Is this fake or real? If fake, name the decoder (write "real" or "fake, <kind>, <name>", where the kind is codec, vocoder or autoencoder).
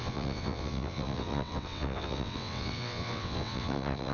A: fake, vocoder, WaveNeXt